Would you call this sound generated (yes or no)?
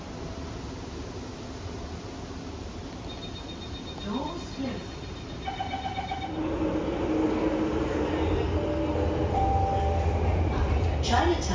no